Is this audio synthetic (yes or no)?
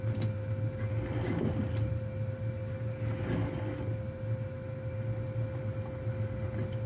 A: no